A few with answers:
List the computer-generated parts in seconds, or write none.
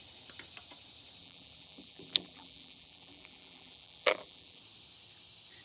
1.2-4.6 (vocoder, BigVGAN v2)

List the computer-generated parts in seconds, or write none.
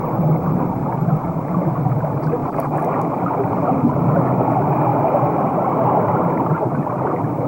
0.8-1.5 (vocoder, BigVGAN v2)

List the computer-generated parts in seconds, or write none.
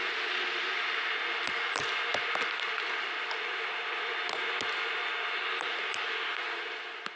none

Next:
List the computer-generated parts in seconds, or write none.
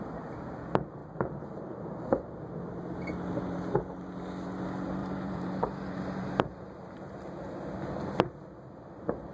1.0-2.3 (vocoder, BigVGAN v2); 5.0-6.3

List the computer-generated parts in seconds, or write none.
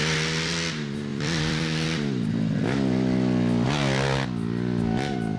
1.1-2.3 (vocoder, BigVGAN v2)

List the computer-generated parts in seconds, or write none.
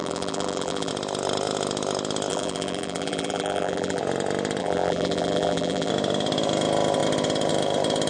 0.0-0.9 (vocoder, BigVGAN v2); 2.3-4.0; 4.6-5.9